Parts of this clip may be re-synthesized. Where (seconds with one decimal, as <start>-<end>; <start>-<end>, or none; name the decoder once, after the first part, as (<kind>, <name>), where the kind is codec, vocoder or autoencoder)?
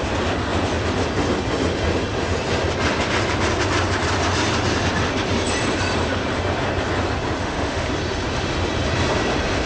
7.4-7.9 (autoencoder, DAC-VAE)